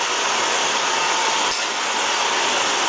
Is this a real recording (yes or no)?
yes